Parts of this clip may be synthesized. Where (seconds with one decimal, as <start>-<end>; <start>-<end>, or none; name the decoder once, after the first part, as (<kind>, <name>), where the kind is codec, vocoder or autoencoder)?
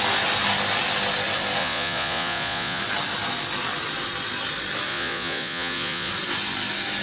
1.6-2.8 (vocoder, Vocos); 4.9-6.1